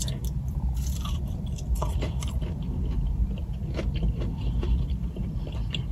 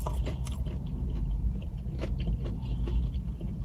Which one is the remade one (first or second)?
first